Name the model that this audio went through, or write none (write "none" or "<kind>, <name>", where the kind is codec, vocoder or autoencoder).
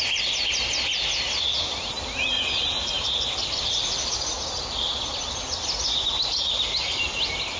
none